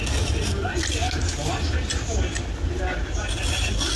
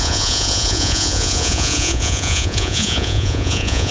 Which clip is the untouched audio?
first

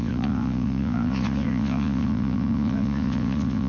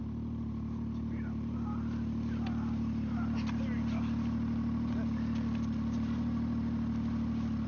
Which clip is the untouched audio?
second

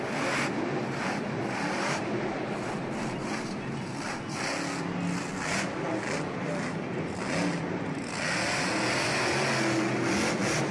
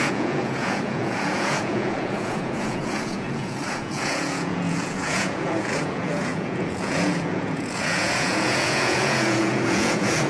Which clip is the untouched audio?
first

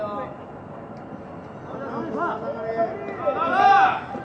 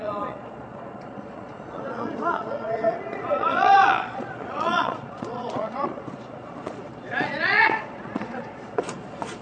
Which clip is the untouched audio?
first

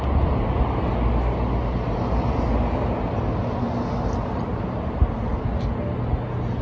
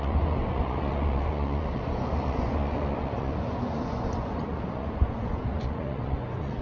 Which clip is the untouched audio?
first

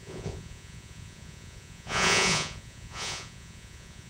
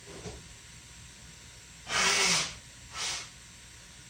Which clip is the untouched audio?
second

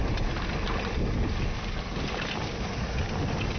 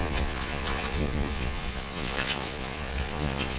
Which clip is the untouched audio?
first